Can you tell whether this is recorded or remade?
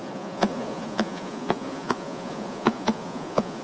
remade